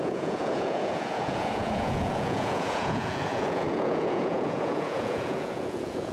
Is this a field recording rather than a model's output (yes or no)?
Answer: no